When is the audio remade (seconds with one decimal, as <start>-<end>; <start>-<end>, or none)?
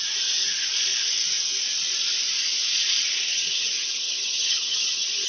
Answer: 3.3-5.3